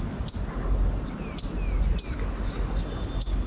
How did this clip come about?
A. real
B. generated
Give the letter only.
A